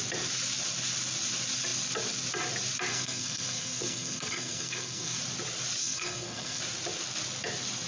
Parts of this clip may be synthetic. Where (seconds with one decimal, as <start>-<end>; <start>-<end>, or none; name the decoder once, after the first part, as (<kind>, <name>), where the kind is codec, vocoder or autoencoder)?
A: 2.9-5.2 (codec, SNAC); 5.8-6.6